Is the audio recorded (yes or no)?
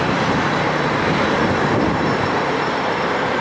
no